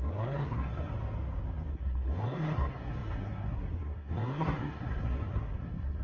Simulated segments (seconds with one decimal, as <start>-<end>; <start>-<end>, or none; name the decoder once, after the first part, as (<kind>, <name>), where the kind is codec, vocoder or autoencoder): 0.0-0.9 (codec, SNAC); 1.7-6.0